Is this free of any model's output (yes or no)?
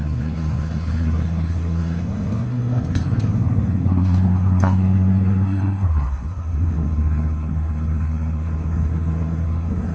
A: no